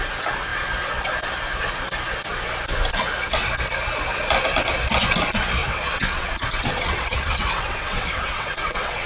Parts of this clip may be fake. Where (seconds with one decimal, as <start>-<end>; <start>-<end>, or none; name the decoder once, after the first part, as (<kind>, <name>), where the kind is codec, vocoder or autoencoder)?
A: 5.6-9.1 (vocoder, WaveNeXt)